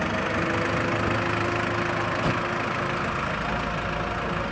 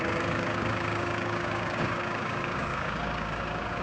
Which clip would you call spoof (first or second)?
second